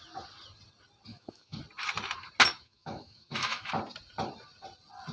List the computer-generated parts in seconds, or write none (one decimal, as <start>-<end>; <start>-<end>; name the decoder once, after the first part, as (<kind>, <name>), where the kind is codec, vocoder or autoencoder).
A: 1.1-1.6 (autoencoder, DAC-VAE); 2.5-3.7